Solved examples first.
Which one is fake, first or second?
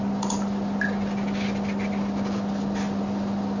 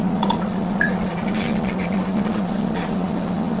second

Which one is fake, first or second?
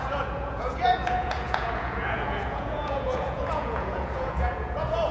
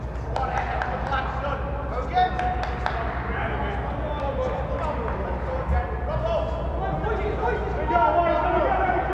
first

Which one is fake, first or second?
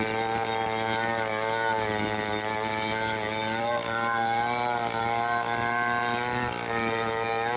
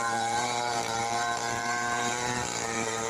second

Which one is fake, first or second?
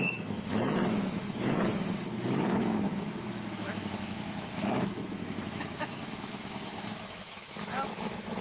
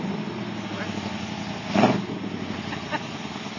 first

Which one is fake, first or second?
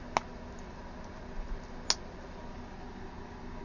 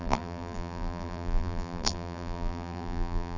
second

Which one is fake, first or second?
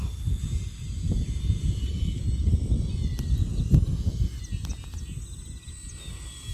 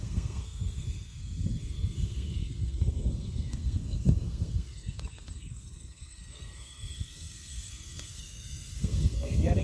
second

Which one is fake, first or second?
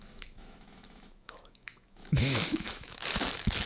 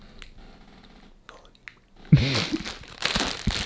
first